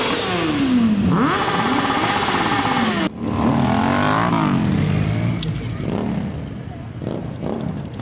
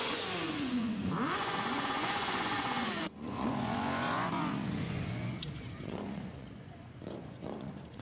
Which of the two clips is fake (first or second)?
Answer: second